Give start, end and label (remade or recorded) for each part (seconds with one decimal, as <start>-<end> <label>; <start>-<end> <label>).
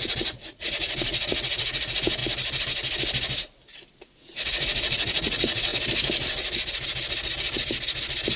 0.0-2.2 remade; 2.2-3.9 recorded; 3.9-5.7 remade; 5.7-8.4 recorded